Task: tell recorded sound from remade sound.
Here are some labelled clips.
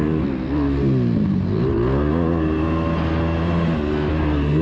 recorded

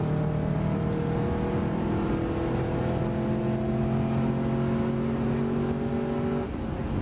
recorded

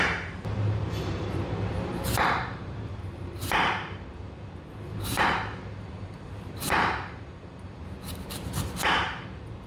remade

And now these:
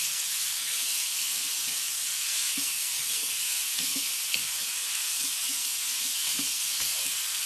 remade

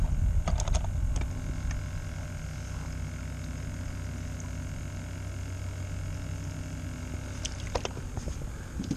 recorded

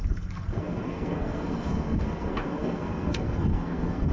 remade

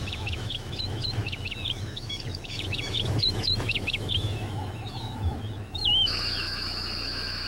remade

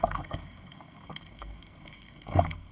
remade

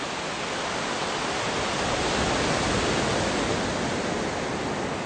recorded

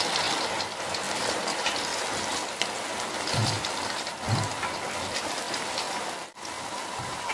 recorded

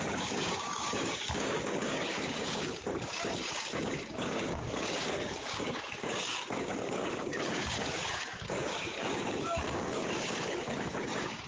remade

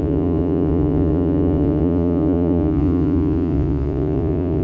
remade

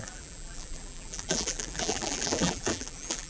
remade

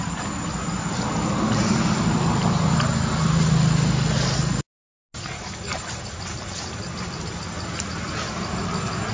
recorded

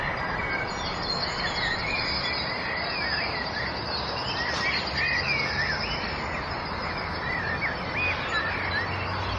recorded